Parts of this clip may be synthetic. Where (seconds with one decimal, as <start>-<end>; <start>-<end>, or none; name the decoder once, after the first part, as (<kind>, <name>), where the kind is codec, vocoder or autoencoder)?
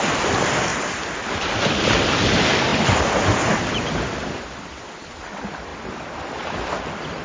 0.7-1.5 (vocoder, BigVGAN v2); 2.7-5.3